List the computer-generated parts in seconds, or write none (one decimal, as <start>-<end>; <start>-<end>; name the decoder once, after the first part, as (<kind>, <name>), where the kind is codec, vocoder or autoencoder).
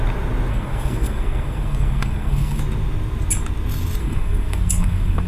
0.5-2.6 (codec, SNAC); 4.0-5.3